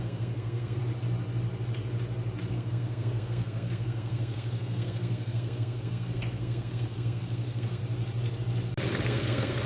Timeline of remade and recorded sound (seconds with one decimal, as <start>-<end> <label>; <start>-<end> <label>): 0.0-0.8 remade; 0.8-2.5 recorded; 2.5-7.8 remade; 7.8-9.0 recorded; 9.0-9.7 remade